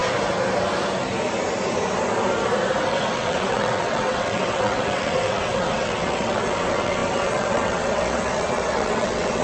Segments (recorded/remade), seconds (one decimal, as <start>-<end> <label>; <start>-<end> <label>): 0.0-2.9 recorded; 2.9-9.4 remade